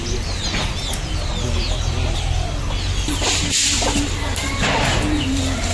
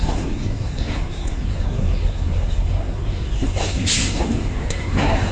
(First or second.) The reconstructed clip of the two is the second